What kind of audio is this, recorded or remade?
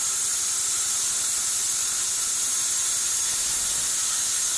recorded